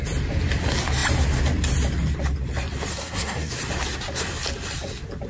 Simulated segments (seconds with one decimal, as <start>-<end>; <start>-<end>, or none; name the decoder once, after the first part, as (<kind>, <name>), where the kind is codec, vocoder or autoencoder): 2.9-3.5 (codec, SNAC)